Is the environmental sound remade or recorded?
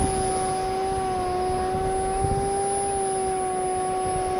recorded